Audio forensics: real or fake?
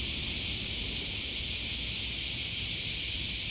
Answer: real